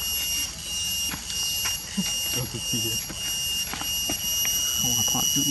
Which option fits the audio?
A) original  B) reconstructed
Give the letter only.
A